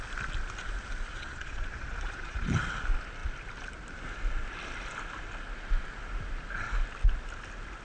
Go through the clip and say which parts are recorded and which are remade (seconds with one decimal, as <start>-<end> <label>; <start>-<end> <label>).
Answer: 0.0-1.1 recorded; 1.1-2.7 remade; 2.7-7.8 recorded